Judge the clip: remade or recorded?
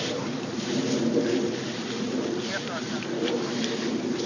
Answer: remade